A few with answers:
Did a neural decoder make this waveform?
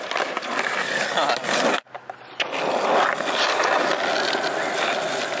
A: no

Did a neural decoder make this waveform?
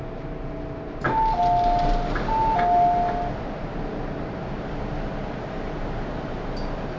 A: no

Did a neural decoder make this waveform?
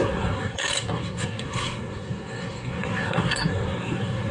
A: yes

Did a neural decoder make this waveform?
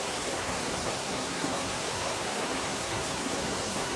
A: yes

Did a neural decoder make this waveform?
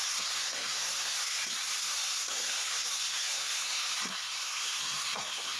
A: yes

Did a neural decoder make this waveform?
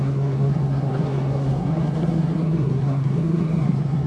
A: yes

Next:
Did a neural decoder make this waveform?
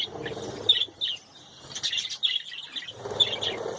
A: no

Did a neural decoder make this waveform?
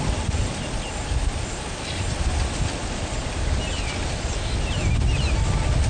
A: no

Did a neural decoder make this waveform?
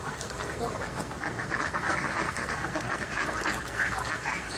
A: yes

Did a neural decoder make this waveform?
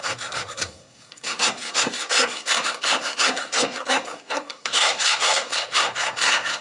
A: yes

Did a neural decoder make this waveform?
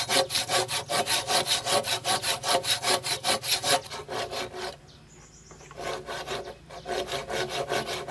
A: no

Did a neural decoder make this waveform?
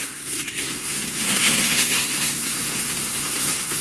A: yes